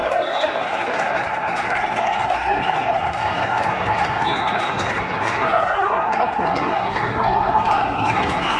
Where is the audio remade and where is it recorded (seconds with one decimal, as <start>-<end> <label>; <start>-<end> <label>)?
0.0-8.6 remade